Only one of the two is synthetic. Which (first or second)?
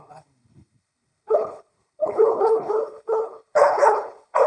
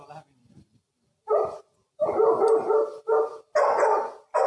first